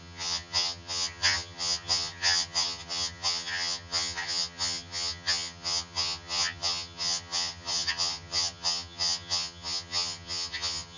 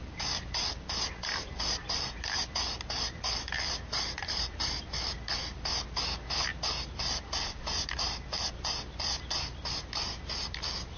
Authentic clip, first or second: second